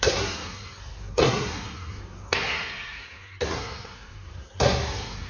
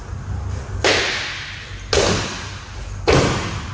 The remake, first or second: first